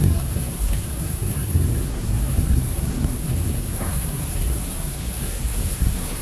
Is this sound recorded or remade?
remade